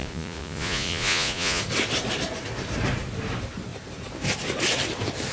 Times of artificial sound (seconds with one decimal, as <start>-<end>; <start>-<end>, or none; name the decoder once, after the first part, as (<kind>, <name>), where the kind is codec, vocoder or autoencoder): 0.0-1.6 (vocoder, Vocos)